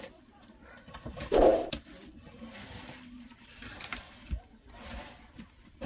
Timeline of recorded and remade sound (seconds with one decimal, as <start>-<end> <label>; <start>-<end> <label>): 0.0-5.9 remade